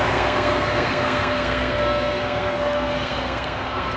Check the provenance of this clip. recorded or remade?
remade